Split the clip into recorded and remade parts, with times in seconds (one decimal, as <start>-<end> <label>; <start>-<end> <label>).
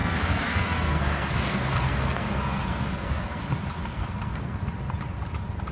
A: 0.0-3.4 remade; 3.4-3.8 recorded; 3.8-4.6 remade; 4.6-5.7 recorded